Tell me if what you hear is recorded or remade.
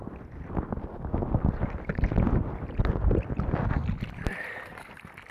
recorded